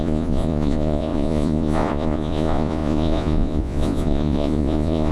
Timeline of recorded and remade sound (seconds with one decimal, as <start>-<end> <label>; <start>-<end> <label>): 0.0-5.1 remade